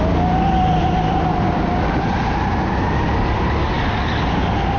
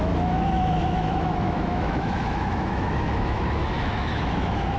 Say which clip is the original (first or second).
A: first